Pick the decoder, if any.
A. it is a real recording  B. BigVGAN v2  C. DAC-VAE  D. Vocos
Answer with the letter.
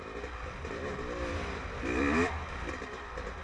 A